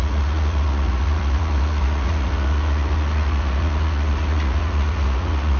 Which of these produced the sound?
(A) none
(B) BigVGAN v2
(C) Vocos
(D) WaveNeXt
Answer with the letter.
C